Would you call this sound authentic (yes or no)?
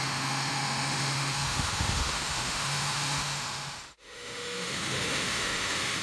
no